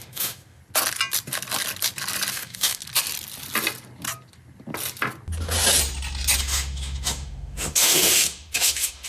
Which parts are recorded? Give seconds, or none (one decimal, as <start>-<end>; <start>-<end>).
0.6-2.3; 2.8-6.4